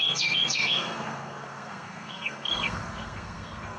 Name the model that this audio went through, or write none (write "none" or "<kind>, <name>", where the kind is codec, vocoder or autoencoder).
codec, SNAC